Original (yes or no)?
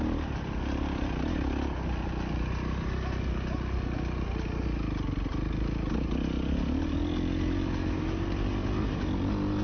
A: yes